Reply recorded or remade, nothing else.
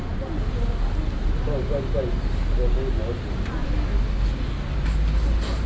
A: recorded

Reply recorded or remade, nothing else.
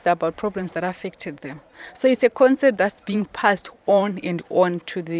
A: remade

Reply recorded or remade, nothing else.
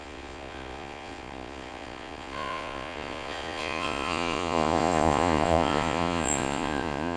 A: remade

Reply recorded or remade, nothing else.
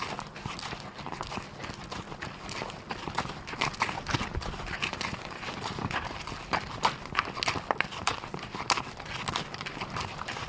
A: recorded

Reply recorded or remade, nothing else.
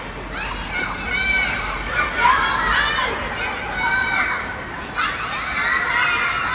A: recorded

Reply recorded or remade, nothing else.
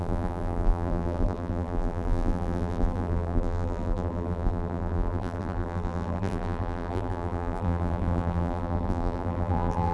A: remade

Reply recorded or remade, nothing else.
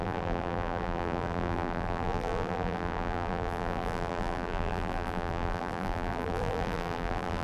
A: remade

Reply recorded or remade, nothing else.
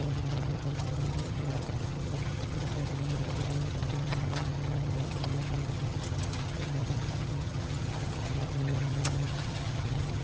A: remade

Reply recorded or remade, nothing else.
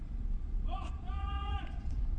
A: remade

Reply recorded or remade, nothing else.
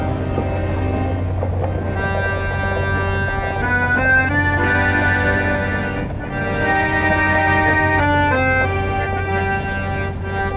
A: recorded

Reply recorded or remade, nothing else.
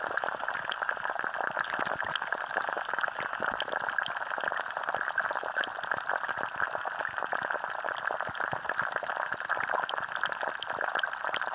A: recorded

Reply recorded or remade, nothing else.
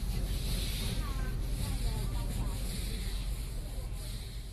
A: recorded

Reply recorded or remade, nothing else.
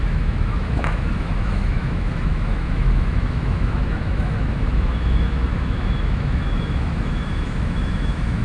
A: remade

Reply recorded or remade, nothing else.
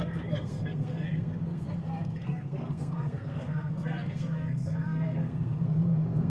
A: remade